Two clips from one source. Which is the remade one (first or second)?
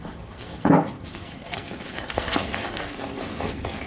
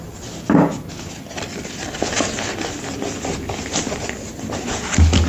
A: first